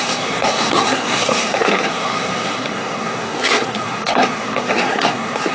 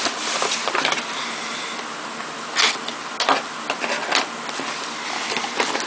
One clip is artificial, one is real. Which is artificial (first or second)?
first